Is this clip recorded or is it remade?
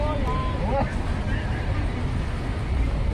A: recorded